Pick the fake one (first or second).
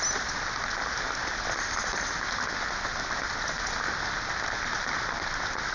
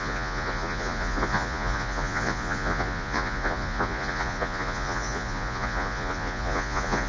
second